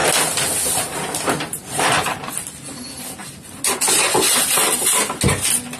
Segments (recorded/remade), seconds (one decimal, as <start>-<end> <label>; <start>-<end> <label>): 0.0-5.8 recorded